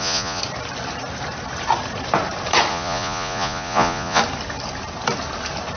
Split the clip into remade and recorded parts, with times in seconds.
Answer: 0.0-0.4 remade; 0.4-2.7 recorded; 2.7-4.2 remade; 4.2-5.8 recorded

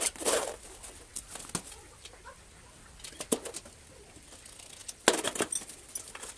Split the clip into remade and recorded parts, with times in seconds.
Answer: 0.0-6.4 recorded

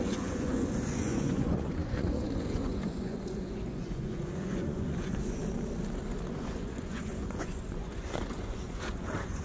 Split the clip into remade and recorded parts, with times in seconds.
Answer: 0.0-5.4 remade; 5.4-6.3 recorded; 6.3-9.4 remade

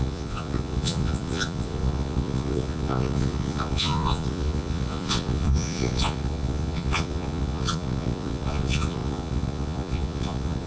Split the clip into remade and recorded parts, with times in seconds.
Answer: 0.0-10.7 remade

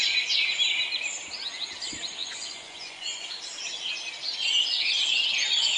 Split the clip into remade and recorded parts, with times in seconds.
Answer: 0.0-2.2 recorded; 2.2-3.4 remade; 3.4-5.8 recorded

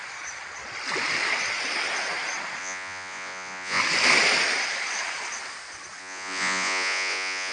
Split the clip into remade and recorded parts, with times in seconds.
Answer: 0.0-2.6 recorded; 2.6-3.8 remade; 3.8-6.0 recorded; 6.0-7.5 remade

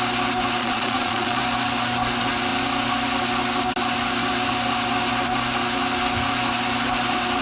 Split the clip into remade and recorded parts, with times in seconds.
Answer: 0.0-0.6 recorded; 0.6-1.4 remade; 1.4-7.4 recorded